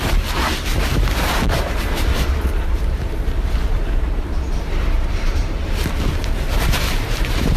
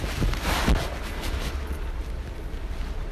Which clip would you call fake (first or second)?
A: first